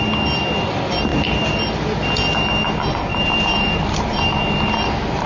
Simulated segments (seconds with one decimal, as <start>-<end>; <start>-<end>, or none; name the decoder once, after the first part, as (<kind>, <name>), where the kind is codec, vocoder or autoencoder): 1.1-1.7 (vocoder, BigVGAN v2); 3.1-5.3